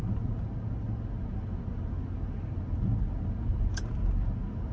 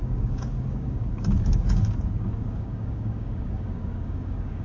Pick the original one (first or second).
first